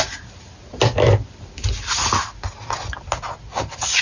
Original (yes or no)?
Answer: yes